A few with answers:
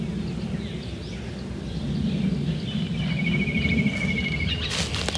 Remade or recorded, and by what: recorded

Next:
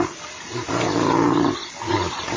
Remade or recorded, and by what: recorded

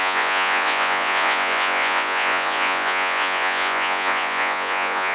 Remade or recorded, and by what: remade, vocoder, Vocos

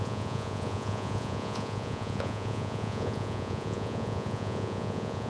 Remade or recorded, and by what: remade, vocoder, Vocos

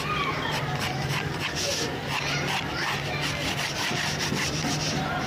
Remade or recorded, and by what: recorded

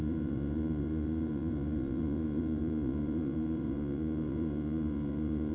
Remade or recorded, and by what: remade, vocoder, Vocos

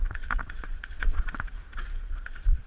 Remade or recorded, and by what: remade, vocoder, Vocos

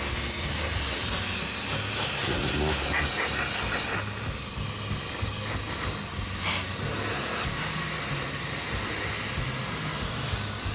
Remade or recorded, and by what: recorded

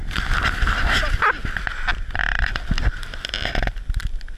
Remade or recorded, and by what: recorded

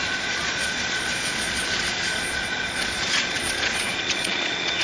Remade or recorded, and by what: remade, vocoder, Vocos